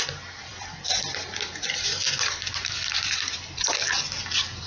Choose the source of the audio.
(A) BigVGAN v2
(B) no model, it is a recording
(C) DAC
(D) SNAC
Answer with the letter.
A